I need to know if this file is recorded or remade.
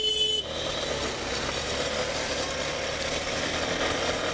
recorded